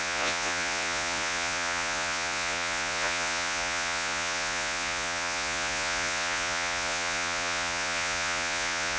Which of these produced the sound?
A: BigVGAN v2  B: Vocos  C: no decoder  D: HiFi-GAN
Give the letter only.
B